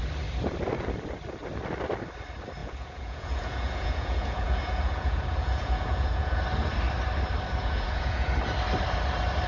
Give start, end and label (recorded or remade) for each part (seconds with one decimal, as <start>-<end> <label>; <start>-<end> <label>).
0.0-2.6 recorded; 2.6-6.4 remade; 6.4-7.6 recorded; 7.6-8.3 remade; 8.3-9.5 recorded

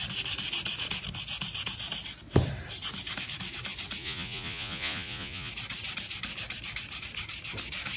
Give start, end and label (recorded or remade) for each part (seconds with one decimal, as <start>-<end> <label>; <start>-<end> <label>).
0.0-4.0 recorded; 4.0-5.5 remade; 5.5-8.0 recorded

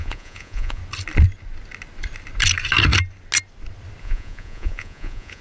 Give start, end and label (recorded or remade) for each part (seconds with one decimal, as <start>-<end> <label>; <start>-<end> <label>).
0.0-0.8 remade; 0.8-4.0 recorded; 4.0-5.4 remade